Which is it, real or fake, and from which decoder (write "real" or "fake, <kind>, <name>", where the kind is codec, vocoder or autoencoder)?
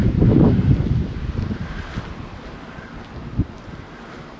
real